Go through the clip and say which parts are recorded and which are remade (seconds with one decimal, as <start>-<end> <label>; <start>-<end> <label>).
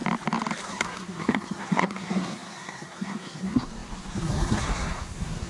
0.0-0.6 recorded; 0.6-5.5 remade